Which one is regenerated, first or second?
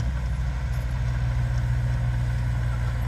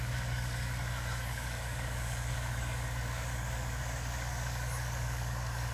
second